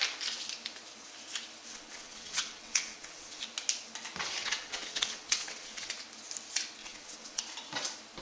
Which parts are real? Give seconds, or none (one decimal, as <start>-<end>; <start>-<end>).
0.0-1.7; 3.4-4.4; 5.9-6.8; 7.4-8.2